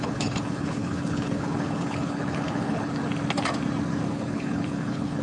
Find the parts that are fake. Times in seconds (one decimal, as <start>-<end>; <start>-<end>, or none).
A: 0.0-3.0; 4.1-5.2